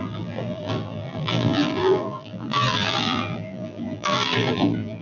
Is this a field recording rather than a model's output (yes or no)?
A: no